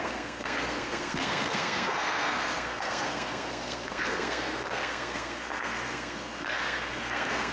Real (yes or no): no